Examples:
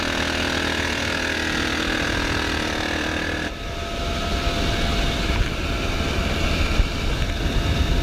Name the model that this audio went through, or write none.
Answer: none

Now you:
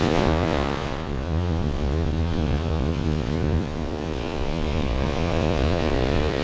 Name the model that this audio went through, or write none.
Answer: vocoder, Vocos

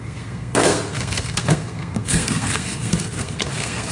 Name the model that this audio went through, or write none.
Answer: codec, SNAC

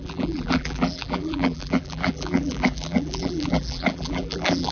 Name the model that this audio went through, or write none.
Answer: vocoder, BigVGAN v2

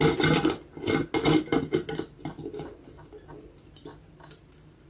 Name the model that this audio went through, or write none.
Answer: none